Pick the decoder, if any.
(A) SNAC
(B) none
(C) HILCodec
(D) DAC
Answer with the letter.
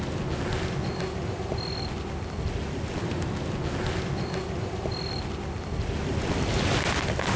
B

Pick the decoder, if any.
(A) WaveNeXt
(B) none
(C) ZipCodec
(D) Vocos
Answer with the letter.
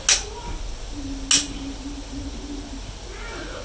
B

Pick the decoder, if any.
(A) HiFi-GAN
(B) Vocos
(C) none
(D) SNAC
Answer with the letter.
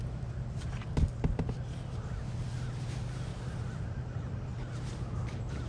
C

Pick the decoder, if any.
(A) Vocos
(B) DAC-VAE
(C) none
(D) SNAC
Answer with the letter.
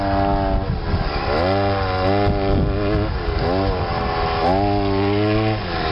C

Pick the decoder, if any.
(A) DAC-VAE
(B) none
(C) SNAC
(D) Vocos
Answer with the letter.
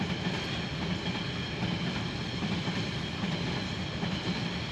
B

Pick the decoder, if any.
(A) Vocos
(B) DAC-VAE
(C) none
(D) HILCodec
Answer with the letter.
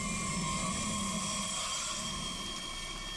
C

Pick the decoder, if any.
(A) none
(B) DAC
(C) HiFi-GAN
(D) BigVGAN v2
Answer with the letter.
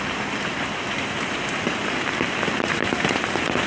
A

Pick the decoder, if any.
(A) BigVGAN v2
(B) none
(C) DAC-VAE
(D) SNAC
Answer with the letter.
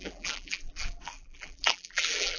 A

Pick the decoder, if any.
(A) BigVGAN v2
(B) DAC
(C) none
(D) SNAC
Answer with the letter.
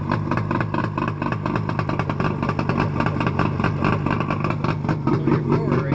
C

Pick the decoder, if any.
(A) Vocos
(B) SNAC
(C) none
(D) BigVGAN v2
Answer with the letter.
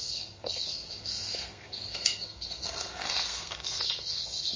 B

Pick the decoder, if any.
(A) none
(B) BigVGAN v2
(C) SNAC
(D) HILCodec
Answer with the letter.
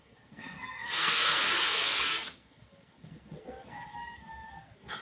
C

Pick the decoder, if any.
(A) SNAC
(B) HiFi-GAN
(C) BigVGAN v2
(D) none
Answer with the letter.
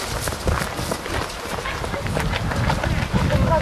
D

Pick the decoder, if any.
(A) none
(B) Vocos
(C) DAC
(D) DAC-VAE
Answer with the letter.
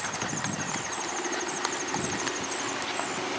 A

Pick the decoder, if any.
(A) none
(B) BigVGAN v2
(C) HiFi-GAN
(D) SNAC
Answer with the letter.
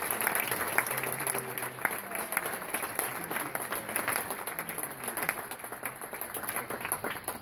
A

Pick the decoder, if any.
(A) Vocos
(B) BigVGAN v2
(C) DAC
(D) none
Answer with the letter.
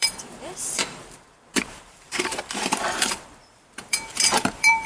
B